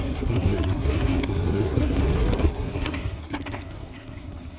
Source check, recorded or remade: remade